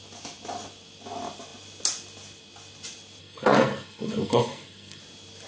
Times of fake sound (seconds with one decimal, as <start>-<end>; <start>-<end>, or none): 3.2-5.0